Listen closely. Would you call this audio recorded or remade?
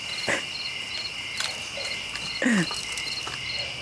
recorded